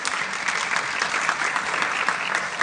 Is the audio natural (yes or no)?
yes